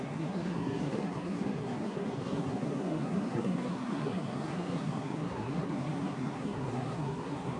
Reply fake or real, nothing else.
fake